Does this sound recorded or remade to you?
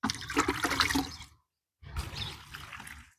recorded